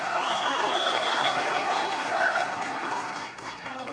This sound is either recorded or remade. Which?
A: remade